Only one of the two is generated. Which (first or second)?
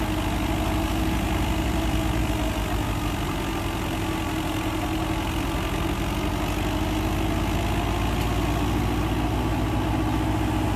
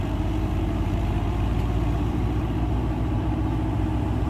second